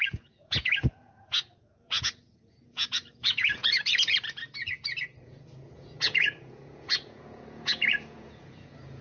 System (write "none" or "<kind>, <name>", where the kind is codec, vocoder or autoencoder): vocoder, Vocos